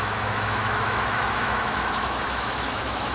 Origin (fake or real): fake